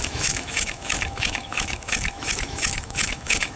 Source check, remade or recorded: remade